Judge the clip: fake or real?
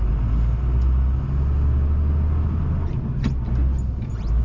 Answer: real